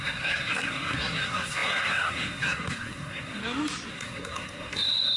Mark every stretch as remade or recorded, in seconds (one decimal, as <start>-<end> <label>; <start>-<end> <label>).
0.0-3.4 remade; 3.4-3.9 recorded; 3.9-5.2 remade